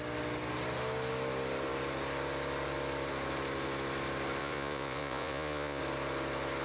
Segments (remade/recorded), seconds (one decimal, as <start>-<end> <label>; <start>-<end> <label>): 0.0-4.4 recorded; 4.4-5.8 remade; 5.8-6.6 recorded